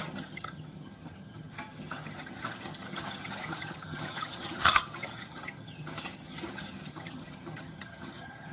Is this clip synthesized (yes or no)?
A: yes